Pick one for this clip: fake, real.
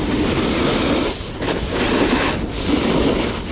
real